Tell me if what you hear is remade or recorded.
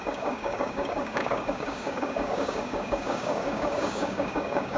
remade